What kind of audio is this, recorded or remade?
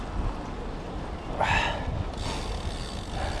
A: recorded